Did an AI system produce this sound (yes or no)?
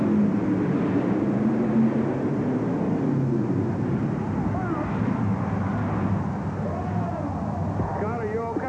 no